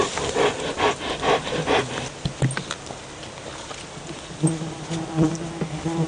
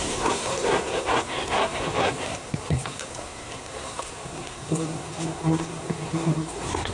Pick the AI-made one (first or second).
second